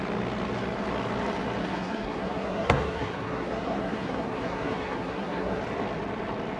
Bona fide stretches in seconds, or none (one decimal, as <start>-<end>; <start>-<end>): 0.0-1.6; 5.6-6.6

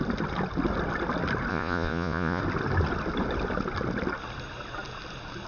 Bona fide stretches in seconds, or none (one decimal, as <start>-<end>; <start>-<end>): 0.0-1.5; 2.4-5.5

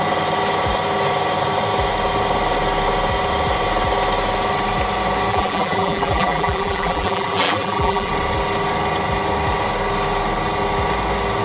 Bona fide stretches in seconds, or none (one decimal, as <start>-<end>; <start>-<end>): 0.0-5.3; 8.1-11.4

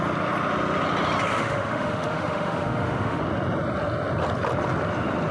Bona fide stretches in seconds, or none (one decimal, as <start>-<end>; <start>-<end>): 0.0-1.3; 3.2-5.3

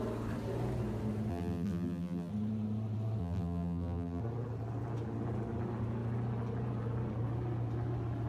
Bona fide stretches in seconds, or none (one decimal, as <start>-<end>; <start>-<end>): 0.0-1.3; 2.3-3.2; 4.2-8.3

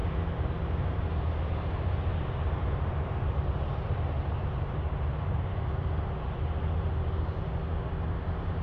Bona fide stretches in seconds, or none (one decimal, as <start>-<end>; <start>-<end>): 0.0-2.1; 5.7-8.6

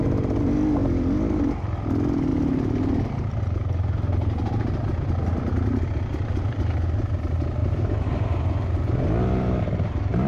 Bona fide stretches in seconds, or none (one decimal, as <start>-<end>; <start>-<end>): 0.0-7.6

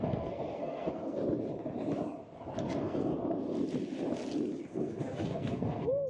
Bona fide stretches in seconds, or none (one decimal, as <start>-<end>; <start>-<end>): 1.2-2.6; 3.1-4.7